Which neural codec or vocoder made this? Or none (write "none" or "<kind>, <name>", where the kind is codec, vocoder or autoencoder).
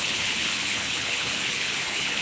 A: codec, HILCodec